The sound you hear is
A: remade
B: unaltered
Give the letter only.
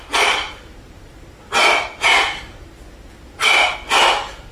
B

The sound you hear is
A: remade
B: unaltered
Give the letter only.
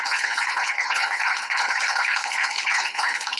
A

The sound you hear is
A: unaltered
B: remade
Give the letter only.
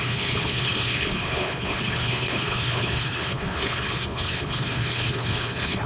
B